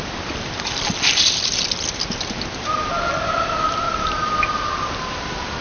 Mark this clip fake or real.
real